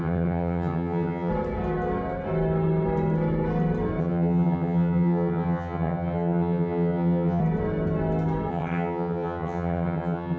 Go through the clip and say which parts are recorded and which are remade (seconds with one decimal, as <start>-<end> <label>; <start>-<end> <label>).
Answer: 0.0-1.3 remade; 1.3-4.0 recorded; 4.0-7.4 remade; 7.4-8.5 recorded; 8.5-10.4 remade